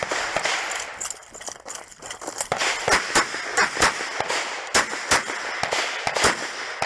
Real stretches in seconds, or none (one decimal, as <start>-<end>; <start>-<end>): 0.0-6.9